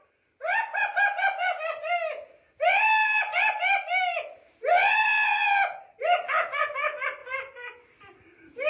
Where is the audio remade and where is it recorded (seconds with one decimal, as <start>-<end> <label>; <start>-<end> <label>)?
0.0-8.7 recorded